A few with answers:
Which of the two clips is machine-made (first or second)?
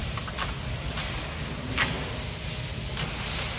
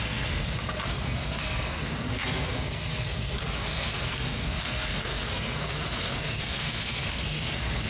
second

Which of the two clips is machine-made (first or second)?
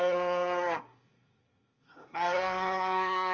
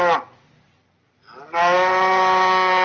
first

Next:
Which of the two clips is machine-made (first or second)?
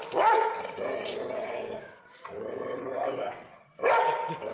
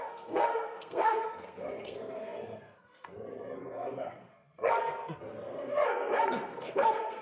second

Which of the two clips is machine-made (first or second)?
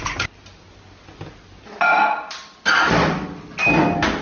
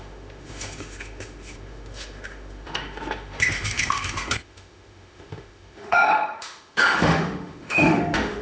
second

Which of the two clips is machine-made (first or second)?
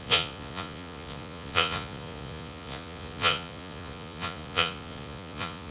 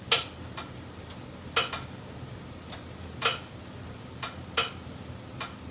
first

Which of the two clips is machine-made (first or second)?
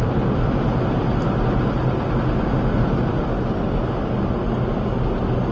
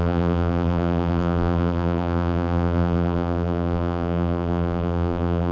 second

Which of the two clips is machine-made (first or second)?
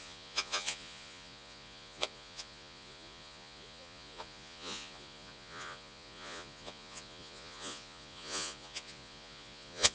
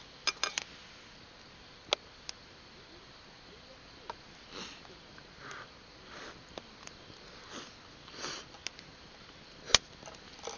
first